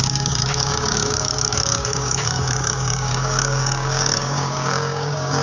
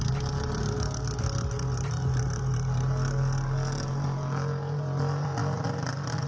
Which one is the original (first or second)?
second